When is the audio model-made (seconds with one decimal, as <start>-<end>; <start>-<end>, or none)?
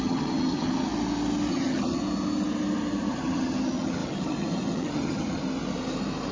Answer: 0.0-0.9; 1.5-2.0; 3.1-5.4